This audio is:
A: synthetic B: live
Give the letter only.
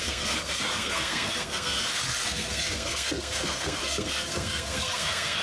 A